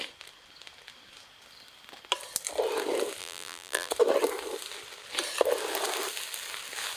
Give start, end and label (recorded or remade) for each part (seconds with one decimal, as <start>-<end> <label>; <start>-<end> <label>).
0.0-3.2 recorded; 3.2-3.9 remade; 3.9-7.0 recorded